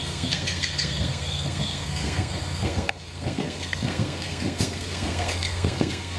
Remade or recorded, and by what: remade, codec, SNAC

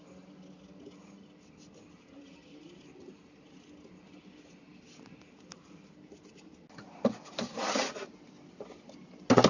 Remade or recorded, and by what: recorded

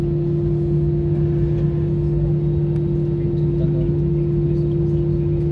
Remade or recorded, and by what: recorded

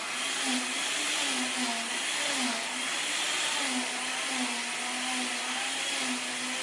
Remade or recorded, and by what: recorded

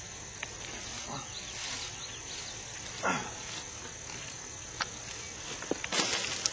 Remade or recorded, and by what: recorded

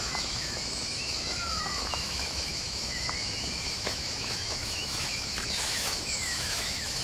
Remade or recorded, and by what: remade, autoencoder, DAC-VAE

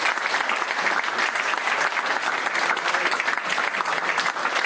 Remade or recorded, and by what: recorded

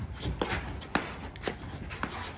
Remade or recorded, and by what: recorded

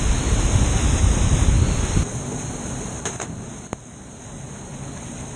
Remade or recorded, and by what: recorded